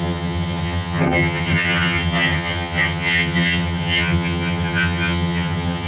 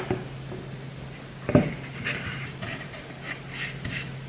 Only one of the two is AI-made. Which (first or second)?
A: first